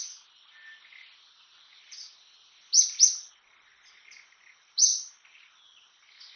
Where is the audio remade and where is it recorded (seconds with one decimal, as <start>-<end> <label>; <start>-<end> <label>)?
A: 0.0-6.4 recorded